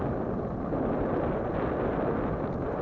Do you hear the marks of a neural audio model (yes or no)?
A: no